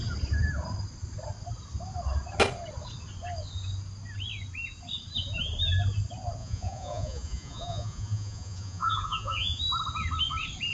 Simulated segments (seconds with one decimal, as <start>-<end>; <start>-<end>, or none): 6.4-9.6